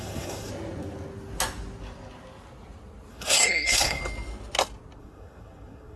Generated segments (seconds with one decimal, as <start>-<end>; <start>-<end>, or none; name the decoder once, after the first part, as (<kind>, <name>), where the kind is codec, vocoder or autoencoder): 0.0-0.5 (codec, SNAC); 3.1-4.0; 5.0-6.0